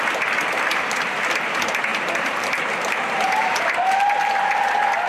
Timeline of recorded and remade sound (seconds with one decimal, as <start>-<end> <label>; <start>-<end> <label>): 0.0-1.9 recorded; 1.9-3.6 remade; 3.6-5.1 recorded